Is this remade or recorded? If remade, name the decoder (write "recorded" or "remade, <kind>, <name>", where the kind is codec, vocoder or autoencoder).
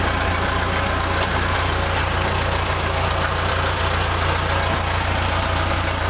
recorded